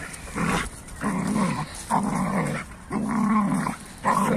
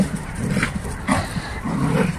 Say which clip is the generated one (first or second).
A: second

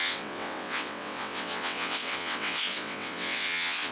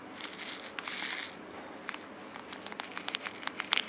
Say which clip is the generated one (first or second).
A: first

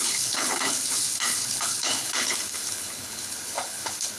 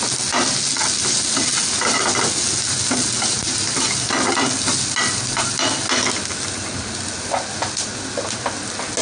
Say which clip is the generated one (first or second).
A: first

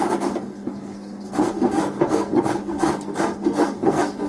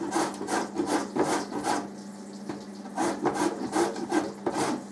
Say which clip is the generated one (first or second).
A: first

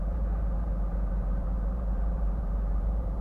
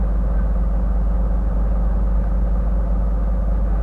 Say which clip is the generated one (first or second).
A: first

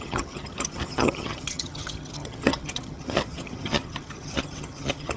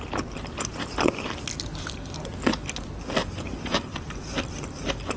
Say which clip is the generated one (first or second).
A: first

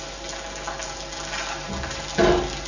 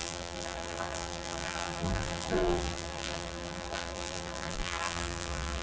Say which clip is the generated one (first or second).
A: second